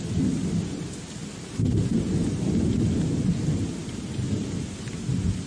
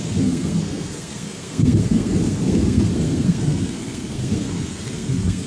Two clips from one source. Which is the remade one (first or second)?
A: second